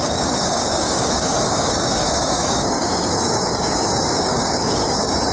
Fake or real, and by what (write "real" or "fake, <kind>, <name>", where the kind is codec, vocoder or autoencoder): fake, codec, DAC